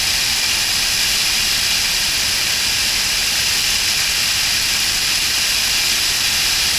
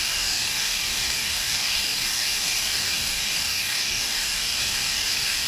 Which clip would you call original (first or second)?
first